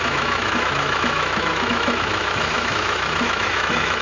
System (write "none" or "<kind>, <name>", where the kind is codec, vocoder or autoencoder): autoencoder, DAC-VAE